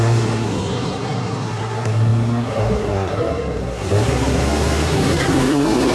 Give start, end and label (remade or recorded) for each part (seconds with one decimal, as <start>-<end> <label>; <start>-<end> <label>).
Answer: 0.0-5.9 remade